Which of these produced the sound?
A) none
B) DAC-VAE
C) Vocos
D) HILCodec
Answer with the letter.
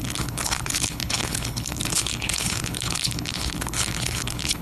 D